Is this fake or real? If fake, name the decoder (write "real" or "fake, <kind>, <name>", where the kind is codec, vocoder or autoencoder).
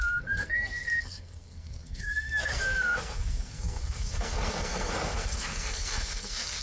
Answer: fake, codec, SNAC